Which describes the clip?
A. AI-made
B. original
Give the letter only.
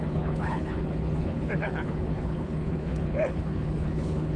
A